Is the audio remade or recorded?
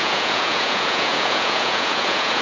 remade